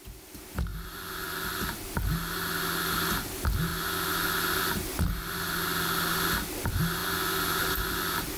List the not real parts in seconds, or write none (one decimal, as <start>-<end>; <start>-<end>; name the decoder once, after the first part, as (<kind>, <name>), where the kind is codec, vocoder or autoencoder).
none